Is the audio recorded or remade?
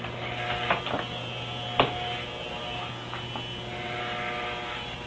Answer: recorded